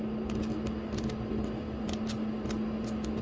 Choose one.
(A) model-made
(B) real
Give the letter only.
B